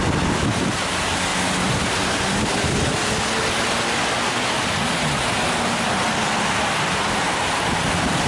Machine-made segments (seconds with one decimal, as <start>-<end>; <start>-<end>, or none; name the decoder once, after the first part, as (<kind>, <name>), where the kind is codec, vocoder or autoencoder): 1.3-3.1 (vocoder, BigVGAN v2)